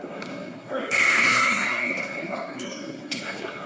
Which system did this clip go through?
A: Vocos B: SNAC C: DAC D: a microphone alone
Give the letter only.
B